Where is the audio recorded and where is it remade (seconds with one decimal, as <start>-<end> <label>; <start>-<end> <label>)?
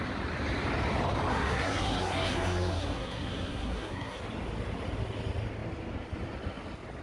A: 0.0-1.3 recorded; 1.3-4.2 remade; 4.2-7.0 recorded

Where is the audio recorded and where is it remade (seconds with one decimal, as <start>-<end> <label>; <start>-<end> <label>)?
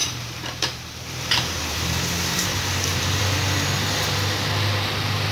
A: 0.0-3.2 remade; 3.2-5.3 recorded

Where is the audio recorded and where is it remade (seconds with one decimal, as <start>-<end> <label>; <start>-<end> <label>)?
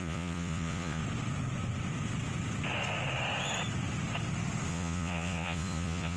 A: 0.0-1.0 remade; 1.0-4.7 recorded; 4.7-6.2 remade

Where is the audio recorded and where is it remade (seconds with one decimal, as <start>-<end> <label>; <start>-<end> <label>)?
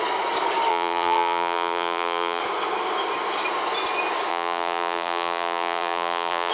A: 0.0-0.7 recorded; 0.7-2.4 remade; 2.4-4.3 recorded; 4.3-6.5 remade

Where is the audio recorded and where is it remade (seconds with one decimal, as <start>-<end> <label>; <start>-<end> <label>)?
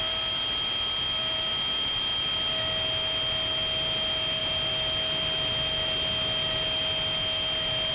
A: 0.0-7.9 recorded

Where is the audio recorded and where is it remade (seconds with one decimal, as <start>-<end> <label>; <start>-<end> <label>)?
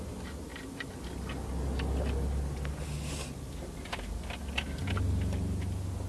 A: 0.0-6.1 recorded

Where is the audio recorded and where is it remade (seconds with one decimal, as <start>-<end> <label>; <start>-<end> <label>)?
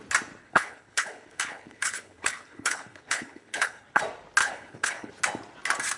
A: 0.0-0.4 recorded; 0.4-4.0 remade; 4.0-4.4 recorded; 4.4-5.1 remade; 5.1-6.0 recorded